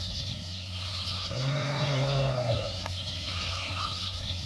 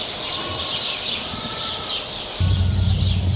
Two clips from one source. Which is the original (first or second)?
second